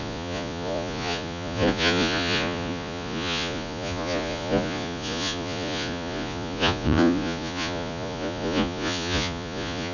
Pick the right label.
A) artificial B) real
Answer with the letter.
A